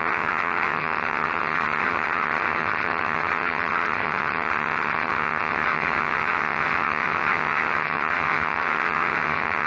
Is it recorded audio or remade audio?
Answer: remade